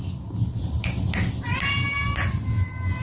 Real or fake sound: real